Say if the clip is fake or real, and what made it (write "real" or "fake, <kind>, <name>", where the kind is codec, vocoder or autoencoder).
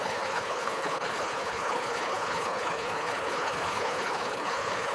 fake, codec, HILCodec